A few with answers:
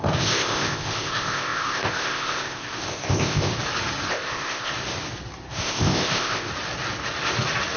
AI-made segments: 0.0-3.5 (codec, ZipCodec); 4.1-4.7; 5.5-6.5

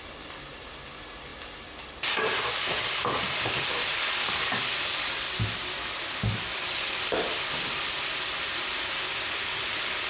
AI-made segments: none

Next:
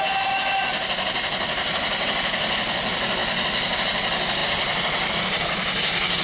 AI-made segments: none

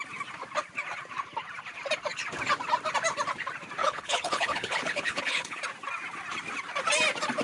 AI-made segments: 3.8-5.6 (codec, HILCodec)

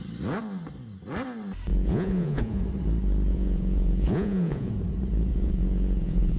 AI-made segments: 1.7-2.6 (vocoder, Vocos); 3.3-4.7; 5.3-6.4